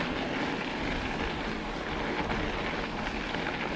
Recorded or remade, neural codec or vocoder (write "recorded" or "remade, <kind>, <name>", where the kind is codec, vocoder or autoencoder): recorded